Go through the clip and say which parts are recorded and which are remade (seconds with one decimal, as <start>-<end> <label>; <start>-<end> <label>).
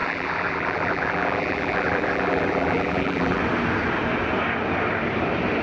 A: 0.0-3.4 remade; 3.4-5.6 recorded